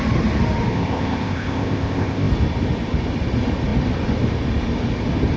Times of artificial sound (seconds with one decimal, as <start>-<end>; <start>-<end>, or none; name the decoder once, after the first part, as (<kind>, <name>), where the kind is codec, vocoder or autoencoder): 0.7-2.3 (codec, ZipCodec)